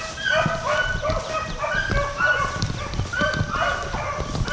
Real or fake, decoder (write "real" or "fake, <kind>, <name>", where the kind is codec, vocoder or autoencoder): real